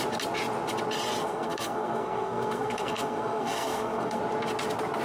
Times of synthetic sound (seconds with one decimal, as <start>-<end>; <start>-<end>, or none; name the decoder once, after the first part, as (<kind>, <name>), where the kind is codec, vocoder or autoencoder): 1.2-4.2 (codec, SNAC)